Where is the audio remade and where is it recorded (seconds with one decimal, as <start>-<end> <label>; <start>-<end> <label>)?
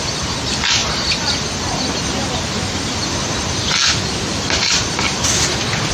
0.0-5.9 recorded